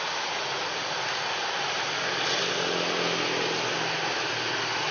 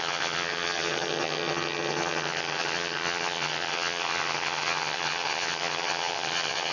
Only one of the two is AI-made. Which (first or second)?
second